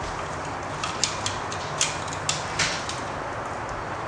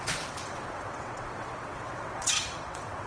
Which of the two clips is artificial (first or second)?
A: second